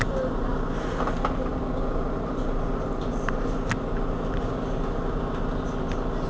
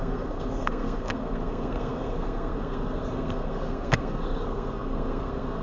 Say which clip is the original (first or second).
first